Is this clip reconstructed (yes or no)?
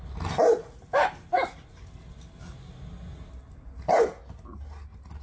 no